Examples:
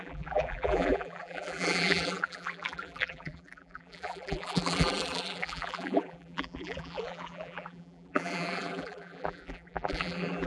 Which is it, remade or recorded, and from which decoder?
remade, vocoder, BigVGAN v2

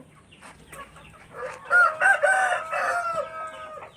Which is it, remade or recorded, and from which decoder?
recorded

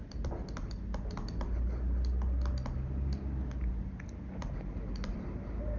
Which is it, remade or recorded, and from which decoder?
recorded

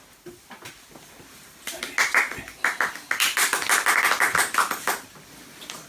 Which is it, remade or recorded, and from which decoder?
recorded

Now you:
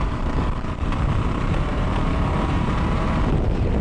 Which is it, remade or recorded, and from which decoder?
remade, vocoder, BigVGAN v2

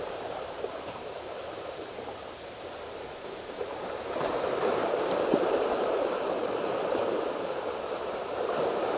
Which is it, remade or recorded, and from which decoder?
remade, vocoder, BigVGAN v2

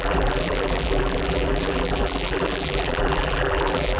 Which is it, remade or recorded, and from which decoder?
remade, vocoder, BigVGAN v2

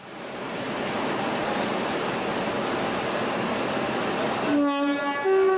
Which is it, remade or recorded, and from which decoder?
recorded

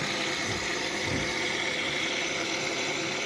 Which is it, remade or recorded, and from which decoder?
recorded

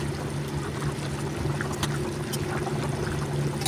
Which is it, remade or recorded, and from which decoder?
recorded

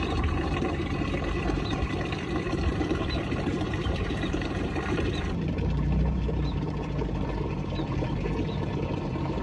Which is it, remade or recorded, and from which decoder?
remade, vocoder, BigVGAN v2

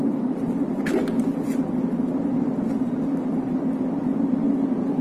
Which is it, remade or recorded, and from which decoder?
remade, vocoder, BigVGAN v2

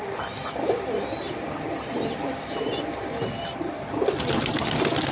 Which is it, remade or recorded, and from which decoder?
remade, vocoder, BigVGAN v2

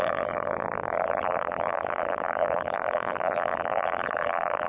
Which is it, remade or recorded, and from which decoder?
remade, vocoder, BigVGAN v2